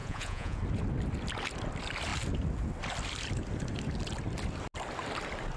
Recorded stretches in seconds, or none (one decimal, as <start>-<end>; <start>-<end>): 0.6-5.6